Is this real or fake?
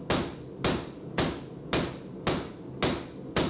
real